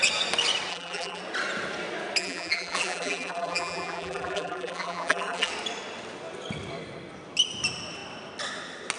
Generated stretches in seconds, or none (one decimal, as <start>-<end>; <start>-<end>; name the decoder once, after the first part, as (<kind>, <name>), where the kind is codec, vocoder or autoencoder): 0.7-1.2 (vocoder, BigVGAN v2); 2.2-5.5